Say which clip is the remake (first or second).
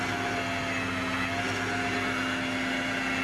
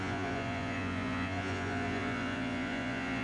second